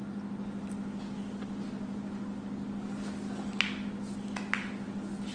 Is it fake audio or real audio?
real